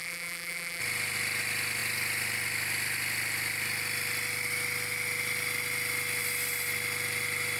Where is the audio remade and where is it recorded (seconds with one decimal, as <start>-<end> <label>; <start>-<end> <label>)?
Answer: 0.0-0.8 remade; 0.8-7.6 recorded